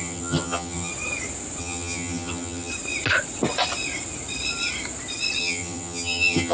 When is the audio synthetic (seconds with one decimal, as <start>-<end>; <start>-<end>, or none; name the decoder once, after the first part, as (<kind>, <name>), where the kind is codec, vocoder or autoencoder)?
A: 0.0-0.9 (vocoder, HiFi-GAN); 1.6-2.7; 5.4-6.5